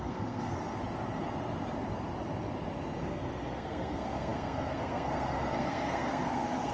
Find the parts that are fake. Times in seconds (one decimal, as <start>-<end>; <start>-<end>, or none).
0.0-0.6; 3.0-6.7